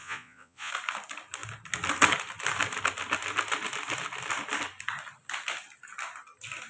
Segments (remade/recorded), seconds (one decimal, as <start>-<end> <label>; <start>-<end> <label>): 0.0-0.7 remade; 0.7-6.7 recorded